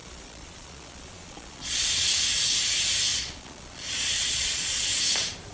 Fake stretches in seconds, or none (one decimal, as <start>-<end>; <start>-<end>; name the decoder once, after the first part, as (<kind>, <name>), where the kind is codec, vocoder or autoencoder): 0.0-2.2 (vocoder, Vocos); 3.1-4.8